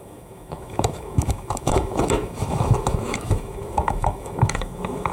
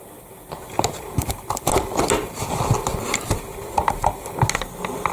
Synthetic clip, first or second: first